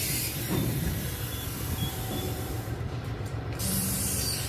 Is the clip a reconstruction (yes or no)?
yes